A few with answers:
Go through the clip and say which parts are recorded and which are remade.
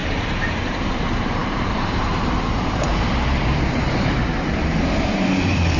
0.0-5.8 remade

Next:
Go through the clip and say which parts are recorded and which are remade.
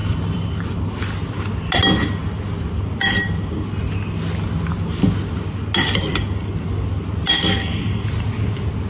0.0-1.0 remade; 1.0-8.9 recorded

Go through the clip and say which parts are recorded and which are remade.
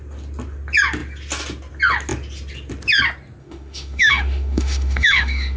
0.0-3.4 recorded; 3.4-5.6 remade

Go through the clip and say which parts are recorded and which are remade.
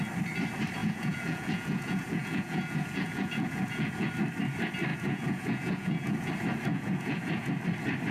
0.0-0.8 recorded; 0.8-4.1 remade; 4.1-4.9 recorded; 4.9-6.3 remade; 6.3-6.7 recorded; 6.7-7.5 remade; 7.5-8.1 recorded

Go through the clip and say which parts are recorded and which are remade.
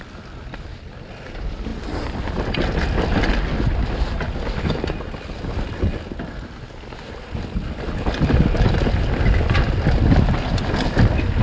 0.0-11.4 recorded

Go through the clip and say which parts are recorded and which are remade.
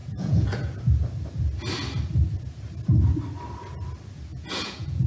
0.0-0.8 remade; 0.8-4.3 recorded; 4.3-5.1 remade